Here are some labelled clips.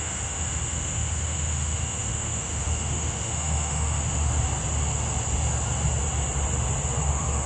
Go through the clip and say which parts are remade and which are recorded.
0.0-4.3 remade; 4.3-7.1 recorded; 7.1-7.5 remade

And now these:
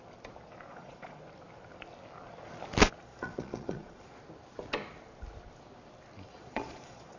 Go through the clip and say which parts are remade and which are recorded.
0.0-0.7 recorded; 0.7-1.2 remade; 1.2-3.1 recorded; 3.1-4.2 remade; 4.2-6.3 recorded; 6.3-7.2 remade

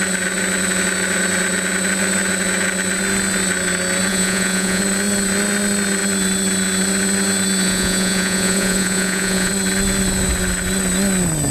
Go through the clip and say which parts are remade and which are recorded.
0.0-4.1 recorded; 4.1-4.8 remade; 4.8-7.6 recorded; 7.6-9.5 remade; 9.5-11.5 recorded

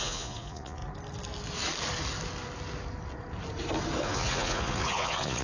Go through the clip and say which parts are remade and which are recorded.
0.0-0.8 remade; 0.8-4.0 recorded; 4.0-5.4 remade

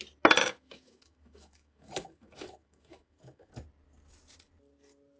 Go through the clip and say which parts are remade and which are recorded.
0.0-0.4 recorded; 0.4-3.5 remade; 3.5-5.2 recorded

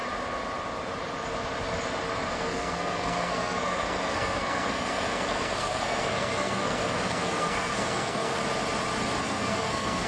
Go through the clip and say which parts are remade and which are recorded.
0.0-2.3 recorded; 2.3-8.4 remade; 8.4-9.2 recorded; 9.2-10.1 remade

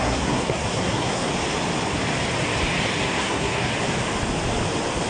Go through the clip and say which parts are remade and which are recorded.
0.0-1.3 remade; 1.3-3.0 recorded; 3.0-3.7 remade; 3.7-5.1 recorded